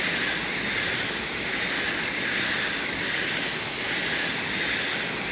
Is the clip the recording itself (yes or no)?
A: yes